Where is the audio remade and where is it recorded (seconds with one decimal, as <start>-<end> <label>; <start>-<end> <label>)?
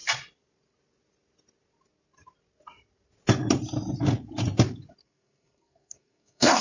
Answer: 0.0-5.0 recorded; 5.0-6.6 remade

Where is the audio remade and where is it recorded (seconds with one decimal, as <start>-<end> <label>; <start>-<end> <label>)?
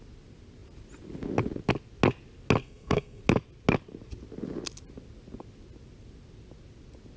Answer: 0.0-2.6 recorded; 2.6-3.2 remade; 3.2-7.2 recorded